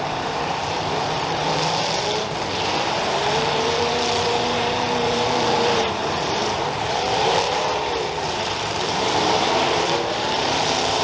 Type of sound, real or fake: fake